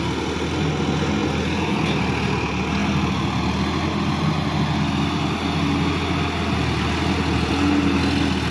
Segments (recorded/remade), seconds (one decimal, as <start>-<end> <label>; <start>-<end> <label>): 0.0-8.5 recorded